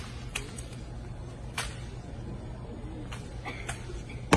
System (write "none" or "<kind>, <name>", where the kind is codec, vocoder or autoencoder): none